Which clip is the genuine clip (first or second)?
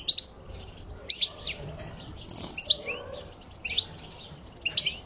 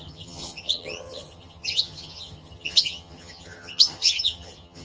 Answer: first